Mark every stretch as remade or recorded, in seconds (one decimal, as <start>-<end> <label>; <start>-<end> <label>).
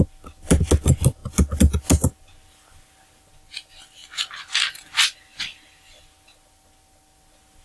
0.0-7.6 recorded